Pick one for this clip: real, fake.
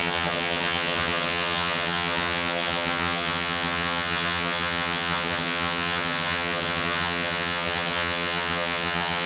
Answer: fake